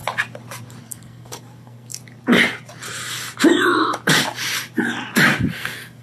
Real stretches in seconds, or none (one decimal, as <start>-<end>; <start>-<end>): 0.0-0.8; 2.0-5.5